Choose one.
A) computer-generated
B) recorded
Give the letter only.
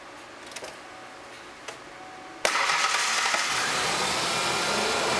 B